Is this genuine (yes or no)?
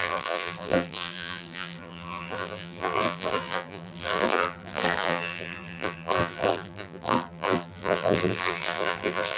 no